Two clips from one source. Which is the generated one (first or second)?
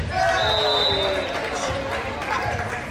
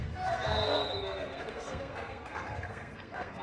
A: second